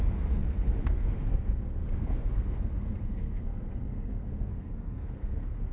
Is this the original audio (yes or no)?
no